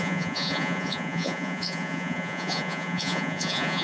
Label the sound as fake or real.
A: fake